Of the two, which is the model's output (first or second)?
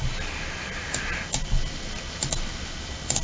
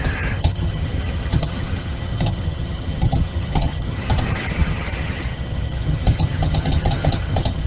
second